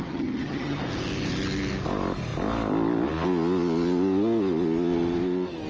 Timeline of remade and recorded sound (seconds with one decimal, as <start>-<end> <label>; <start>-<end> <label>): 0.0-0.8 remade; 0.8-5.7 recorded